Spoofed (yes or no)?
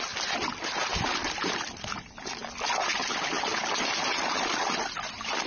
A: no